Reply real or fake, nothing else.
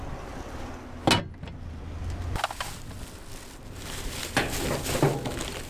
real